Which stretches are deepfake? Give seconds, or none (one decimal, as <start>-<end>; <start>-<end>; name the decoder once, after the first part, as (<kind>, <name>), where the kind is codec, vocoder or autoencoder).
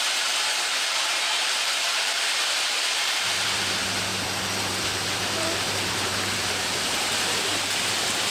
0.0-4.1 (vocoder, BigVGAN v2); 4.8-8.3